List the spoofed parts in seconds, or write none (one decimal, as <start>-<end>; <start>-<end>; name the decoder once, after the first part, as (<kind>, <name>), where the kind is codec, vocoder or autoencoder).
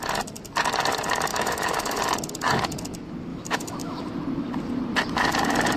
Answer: 1.3-2.0 (autoencoder, DAC-VAE); 3.3-4.0